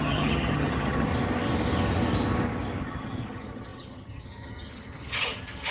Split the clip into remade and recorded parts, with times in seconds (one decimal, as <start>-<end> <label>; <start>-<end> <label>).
0.0-1.1 remade; 1.1-2.8 recorded; 2.8-5.7 remade